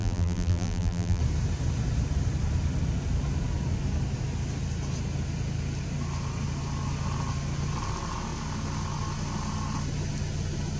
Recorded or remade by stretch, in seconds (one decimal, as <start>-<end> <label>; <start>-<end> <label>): 0.0-1.2 remade; 1.2-10.8 recorded